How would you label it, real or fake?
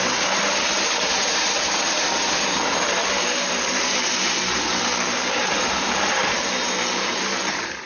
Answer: fake